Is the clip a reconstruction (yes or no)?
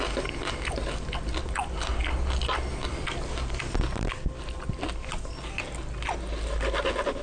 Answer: no